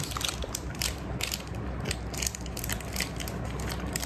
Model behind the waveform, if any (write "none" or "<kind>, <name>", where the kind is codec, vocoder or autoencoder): none